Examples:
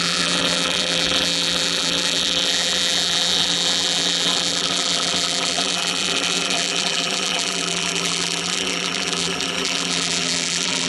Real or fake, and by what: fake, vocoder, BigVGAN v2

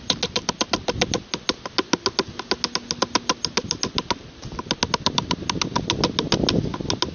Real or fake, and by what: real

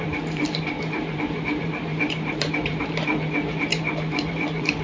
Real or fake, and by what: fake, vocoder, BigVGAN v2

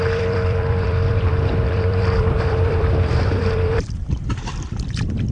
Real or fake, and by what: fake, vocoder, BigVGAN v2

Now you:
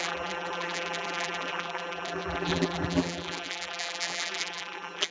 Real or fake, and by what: fake, vocoder, BigVGAN v2